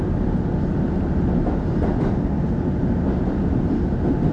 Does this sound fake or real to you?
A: fake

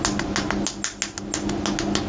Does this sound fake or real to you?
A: real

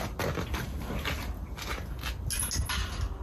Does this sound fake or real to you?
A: real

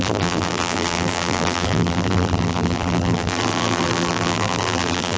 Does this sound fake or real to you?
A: fake